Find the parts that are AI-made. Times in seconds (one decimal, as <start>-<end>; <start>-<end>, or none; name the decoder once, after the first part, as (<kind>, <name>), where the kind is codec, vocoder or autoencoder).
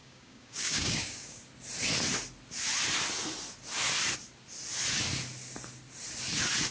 0.0-1.4 (codec, DAC)